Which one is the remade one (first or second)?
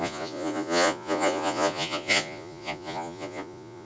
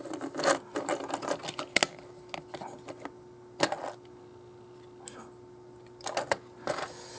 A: first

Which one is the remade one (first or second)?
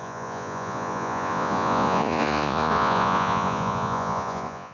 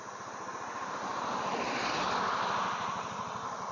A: first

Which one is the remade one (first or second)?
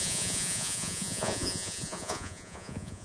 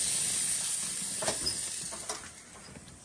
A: first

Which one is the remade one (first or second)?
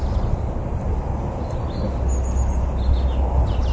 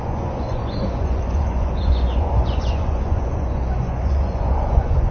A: second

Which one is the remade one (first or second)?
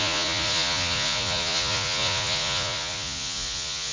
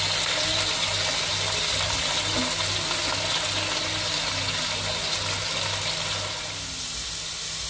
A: first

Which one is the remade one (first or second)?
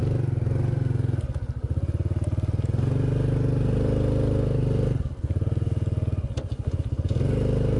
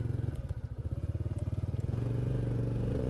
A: second